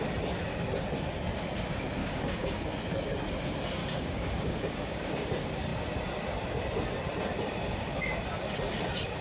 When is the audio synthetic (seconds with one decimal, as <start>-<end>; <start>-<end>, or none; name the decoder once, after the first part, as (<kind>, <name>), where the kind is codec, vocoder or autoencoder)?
2.0-2.6 (codec, DAC); 3.8-5.3

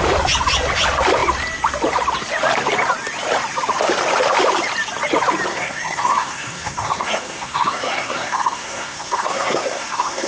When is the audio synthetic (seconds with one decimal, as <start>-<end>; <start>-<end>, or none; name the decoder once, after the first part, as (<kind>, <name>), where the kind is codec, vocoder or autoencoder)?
5.5-10.3 (codec, SNAC)

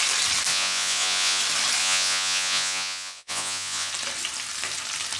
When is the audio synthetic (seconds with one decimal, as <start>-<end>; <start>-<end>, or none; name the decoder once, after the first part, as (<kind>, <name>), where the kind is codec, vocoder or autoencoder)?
0.5-1.4 (vocoder, Vocos); 1.8-3.9